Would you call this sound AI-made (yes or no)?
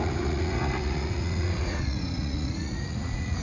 yes